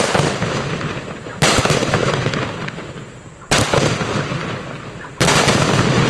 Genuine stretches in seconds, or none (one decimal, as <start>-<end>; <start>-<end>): 0.0-6.1